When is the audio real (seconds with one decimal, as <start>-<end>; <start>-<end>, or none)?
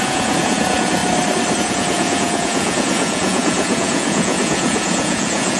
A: 1.0-1.6